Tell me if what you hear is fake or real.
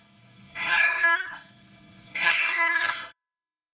fake